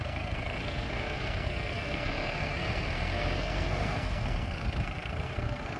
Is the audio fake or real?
fake